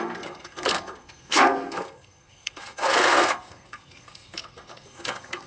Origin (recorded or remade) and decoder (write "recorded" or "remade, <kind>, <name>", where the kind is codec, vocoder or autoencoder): remade, codec, SNAC